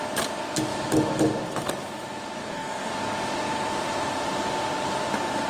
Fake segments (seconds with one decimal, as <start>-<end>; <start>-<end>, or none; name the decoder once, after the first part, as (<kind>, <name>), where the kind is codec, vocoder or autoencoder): 2.4-2.9 (codec, DAC)